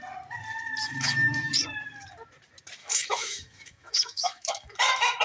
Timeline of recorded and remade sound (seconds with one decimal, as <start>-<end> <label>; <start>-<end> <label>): 0.0-0.8 recorded; 0.8-1.5 remade; 1.5-2.8 recorded; 2.8-5.2 remade